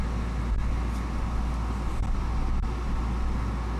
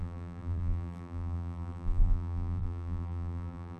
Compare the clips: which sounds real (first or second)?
first